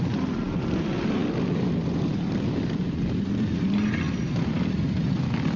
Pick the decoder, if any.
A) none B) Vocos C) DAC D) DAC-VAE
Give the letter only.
A